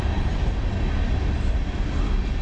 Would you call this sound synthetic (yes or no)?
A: no